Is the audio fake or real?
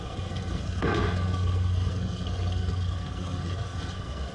fake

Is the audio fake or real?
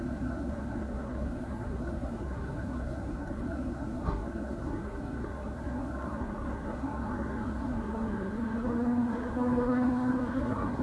fake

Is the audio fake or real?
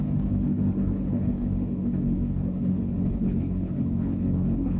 fake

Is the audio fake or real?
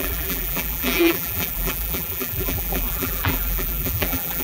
fake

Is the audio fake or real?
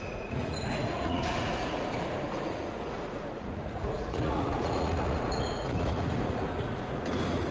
fake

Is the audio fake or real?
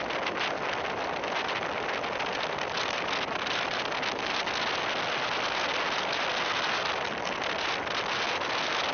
real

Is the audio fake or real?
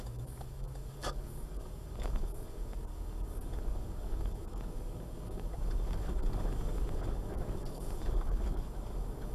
fake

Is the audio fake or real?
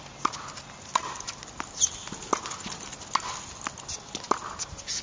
real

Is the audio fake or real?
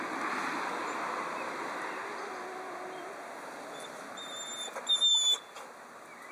real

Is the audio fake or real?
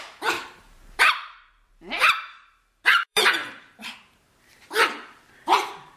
fake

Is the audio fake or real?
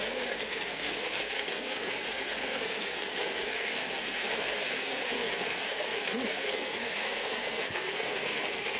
fake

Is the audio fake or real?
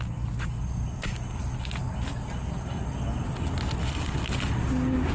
real